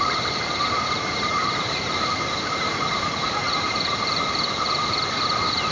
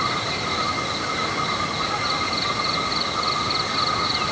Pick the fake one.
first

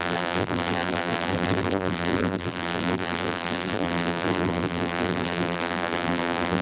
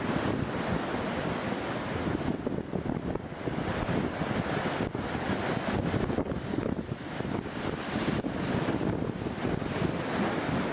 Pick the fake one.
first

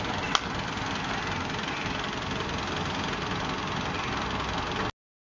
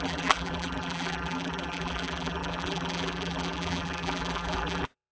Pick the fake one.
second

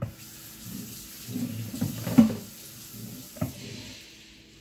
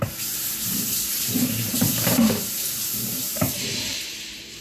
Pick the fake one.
second